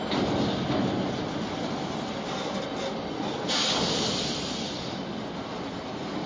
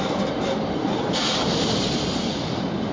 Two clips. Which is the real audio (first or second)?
first